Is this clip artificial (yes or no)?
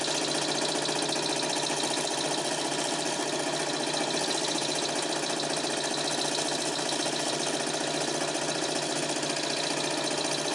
no